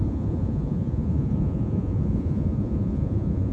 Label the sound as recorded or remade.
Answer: remade